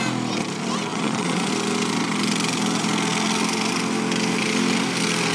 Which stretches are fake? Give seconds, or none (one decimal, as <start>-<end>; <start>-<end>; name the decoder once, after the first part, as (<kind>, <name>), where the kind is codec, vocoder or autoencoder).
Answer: 0.9-1.5 (vocoder, Vocos)